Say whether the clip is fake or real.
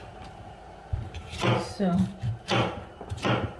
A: fake